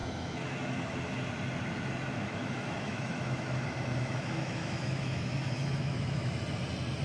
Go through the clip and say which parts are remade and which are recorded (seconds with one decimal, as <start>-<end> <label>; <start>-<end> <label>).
0.0-0.9 remade; 0.9-2.1 recorded; 2.1-6.3 remade; 6.3-7.0 recorded